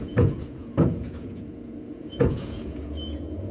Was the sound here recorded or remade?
remade